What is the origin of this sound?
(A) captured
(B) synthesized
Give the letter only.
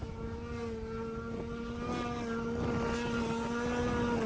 A